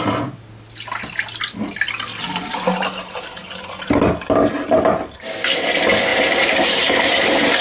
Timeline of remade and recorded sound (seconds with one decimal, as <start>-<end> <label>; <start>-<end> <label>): 0.0-6.1 recorded; 6.1-7.6 remade